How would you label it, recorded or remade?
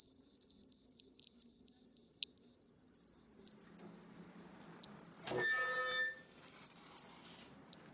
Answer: recorded